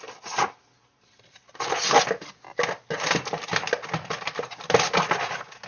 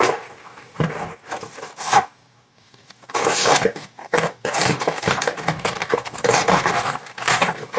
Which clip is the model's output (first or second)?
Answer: second